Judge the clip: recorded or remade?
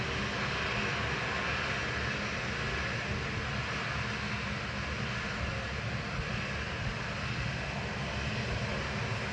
recorded